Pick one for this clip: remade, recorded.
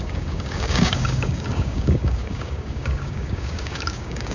remade